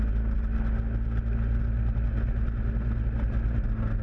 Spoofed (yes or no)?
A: no